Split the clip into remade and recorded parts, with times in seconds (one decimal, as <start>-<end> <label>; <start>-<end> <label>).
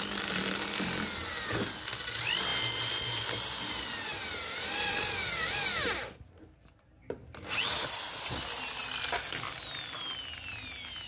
0.0-11.1 recorded